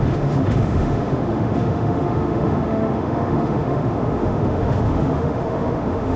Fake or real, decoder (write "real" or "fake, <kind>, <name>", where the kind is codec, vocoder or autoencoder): fake, autoencoder, DAC-VAE